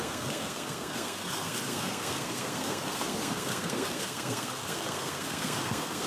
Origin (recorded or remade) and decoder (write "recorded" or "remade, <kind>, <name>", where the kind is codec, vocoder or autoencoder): remade, codec, SNAC